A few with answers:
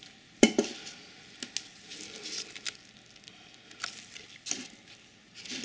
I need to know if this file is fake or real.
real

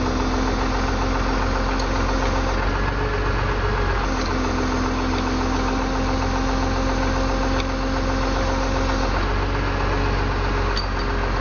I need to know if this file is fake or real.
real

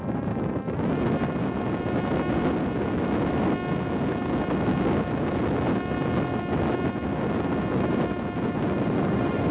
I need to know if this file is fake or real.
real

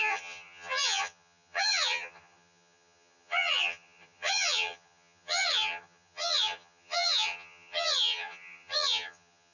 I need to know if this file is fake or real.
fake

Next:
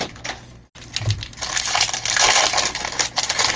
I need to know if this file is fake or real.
real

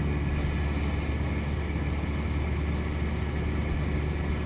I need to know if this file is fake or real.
real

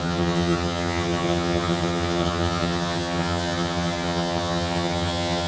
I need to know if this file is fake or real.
fake